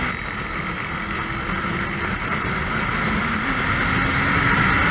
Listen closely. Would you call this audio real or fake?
real